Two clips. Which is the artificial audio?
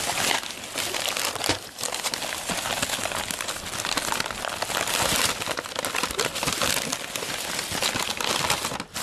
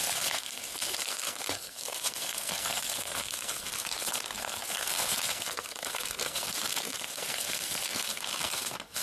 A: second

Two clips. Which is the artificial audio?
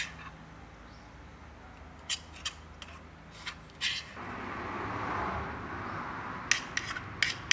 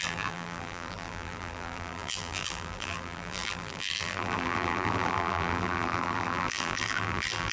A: second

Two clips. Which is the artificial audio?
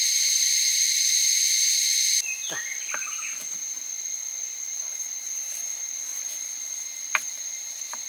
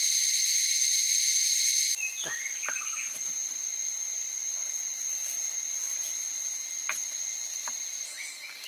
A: first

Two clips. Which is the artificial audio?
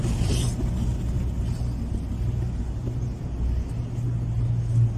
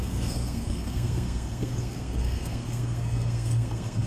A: second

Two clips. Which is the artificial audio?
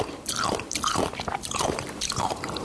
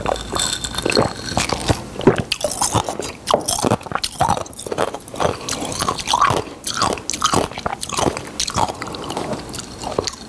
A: first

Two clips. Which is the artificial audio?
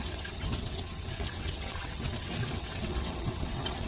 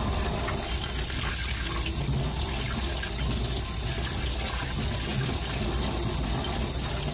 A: first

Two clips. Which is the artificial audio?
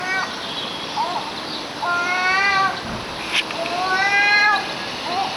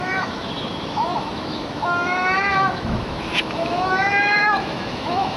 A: second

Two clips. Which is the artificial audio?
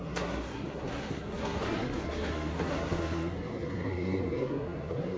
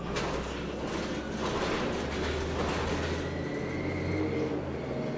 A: first